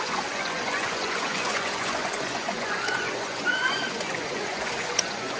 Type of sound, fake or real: fake